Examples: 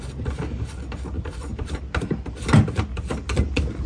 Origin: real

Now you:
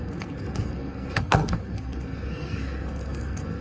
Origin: fake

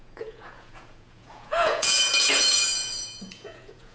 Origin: fake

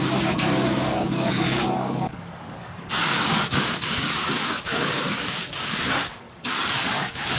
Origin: fake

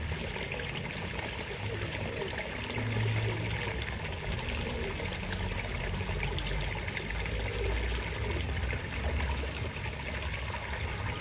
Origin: real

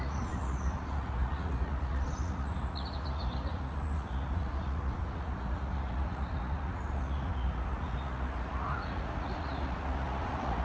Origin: fake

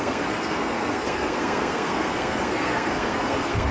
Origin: fake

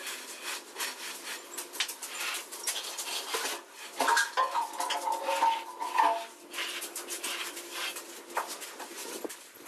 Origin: real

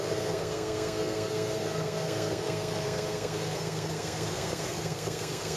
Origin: fake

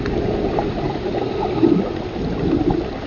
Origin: real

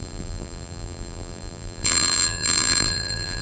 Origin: fake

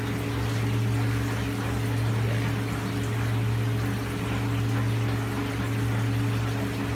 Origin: real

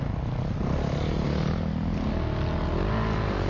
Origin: real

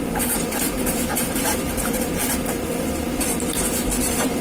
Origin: real